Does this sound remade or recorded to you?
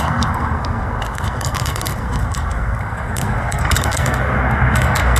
remade